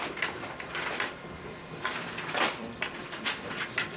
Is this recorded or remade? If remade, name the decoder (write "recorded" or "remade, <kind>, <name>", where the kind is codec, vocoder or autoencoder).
remade, vocoder, BigVGAN v2